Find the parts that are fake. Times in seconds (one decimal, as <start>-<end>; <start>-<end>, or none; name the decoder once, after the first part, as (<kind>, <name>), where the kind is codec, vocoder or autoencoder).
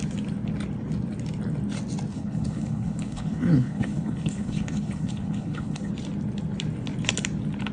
2.1-5.9 (codec, HILCodec)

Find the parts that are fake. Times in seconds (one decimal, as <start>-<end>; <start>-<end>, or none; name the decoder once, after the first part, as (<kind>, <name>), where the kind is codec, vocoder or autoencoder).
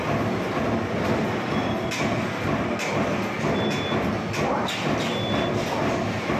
none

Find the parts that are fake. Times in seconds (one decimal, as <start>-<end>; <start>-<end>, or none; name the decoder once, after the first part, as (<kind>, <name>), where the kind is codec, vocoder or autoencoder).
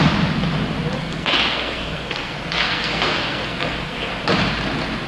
1.0-4.1 (codec, SNAC)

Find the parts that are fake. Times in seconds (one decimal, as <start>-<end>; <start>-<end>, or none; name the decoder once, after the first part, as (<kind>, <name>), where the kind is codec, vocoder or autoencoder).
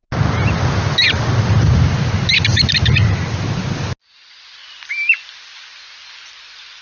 none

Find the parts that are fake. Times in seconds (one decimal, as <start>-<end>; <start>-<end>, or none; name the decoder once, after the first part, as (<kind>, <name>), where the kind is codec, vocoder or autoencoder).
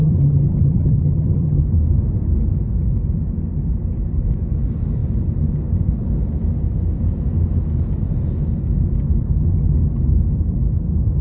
0.0-1.6 (vocoder, HiFi-GAN)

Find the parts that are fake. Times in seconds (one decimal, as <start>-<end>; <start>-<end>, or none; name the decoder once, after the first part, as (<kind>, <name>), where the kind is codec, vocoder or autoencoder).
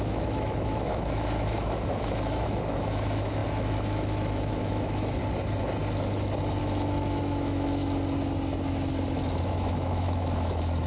0.0-5.2 (autoencoder, DAC-VAE); 6.6-7.8; 9.4-10.9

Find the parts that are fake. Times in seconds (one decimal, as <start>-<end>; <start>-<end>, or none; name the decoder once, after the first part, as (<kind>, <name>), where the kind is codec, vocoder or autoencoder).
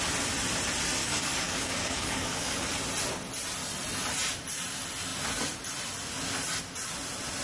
1.0-2.7 (codec, DAC)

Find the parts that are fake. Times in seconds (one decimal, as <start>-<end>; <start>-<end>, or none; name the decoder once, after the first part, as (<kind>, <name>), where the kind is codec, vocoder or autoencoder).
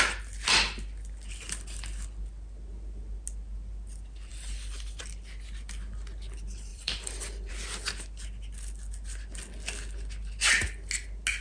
4.3-5.0 (vocoder, BigVGAN v2); 6.7-7.5